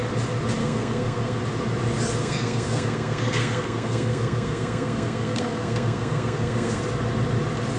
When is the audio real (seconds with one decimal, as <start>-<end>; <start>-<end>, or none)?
0.0-0.6; 1.4-2.2; 6.8-7.8